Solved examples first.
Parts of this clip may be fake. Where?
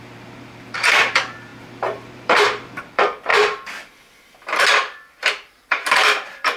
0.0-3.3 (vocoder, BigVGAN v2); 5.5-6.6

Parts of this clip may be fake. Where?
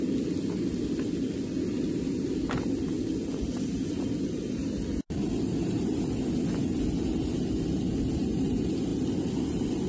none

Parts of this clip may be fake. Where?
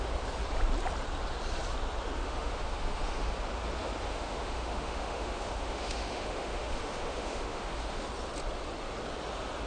2.2-3.3 (autoencoder, DAC-VAE); 4.1-8.1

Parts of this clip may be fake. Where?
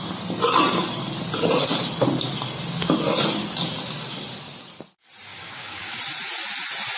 5.3-6.0 (codec, DAC)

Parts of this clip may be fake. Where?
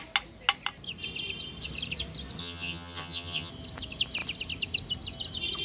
2.4-3.5 (vocoder, HiFi-GAN)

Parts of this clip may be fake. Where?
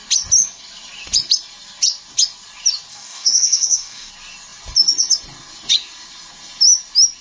2.9-4.1 (codec, DAC)